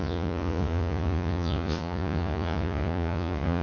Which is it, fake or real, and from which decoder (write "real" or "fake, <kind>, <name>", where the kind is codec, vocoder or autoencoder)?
fake, vocoder, Vocos